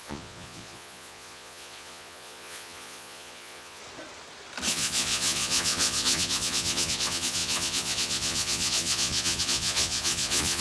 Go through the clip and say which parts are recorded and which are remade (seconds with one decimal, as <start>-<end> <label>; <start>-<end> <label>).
0.0-3.8 remade; 3.8-4.7 recorded; 4.7-10.6 remade